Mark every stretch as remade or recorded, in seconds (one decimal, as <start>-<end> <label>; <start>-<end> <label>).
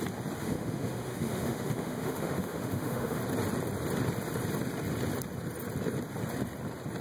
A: 0.0-0.4 recorded; 0.4-3.2 remade; 3.2-7.0 recorded